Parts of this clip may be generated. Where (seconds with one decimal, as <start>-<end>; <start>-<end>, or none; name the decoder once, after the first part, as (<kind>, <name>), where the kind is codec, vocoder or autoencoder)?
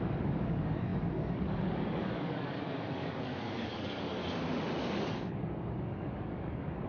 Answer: 0.0-4.2 (codec, DAC); 4.8-6.9